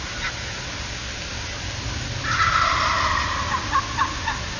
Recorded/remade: recorded